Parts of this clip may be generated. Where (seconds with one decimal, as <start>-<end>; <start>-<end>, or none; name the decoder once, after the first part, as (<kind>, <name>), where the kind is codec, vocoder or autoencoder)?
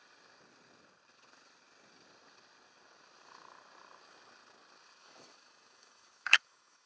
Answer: 5.0-6.9 (autoencoder, DAC-VAE)